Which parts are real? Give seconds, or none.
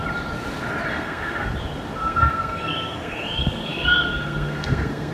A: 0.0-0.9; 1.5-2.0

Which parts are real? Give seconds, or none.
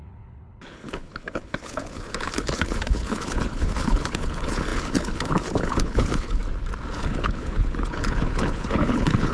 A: 6.4-6.9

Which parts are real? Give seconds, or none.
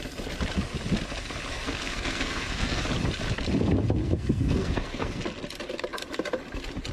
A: 0.0-1.5; 2.8-4.0; 5.2-6.9